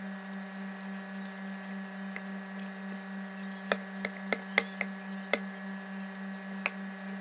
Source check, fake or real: real